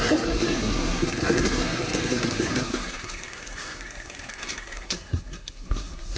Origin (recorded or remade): remade